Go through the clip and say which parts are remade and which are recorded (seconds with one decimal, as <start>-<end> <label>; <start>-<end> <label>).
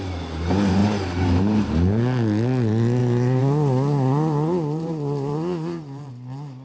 0.0-0.8 recorded; 0.8-1.7 remade; 1.7-3.0 recorded; 3.0-6.1 remade; 6.1-6.6 recorded